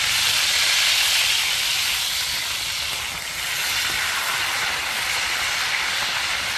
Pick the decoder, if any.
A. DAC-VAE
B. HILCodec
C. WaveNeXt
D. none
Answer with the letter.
D